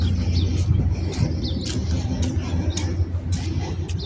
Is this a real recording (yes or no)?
yes